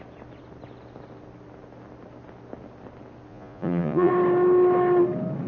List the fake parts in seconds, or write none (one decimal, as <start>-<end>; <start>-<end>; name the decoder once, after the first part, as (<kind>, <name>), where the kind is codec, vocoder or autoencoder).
3.3-4.1 (vocoder, Vocos)